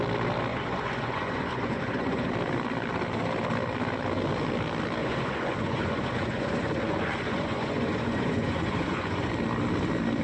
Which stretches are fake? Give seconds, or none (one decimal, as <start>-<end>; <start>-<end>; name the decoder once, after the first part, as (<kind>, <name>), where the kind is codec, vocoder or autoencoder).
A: 0.5-2.3 (vocoder, Vocos); 5.0-9.3